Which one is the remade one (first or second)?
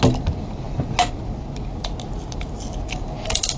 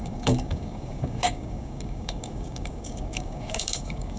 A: second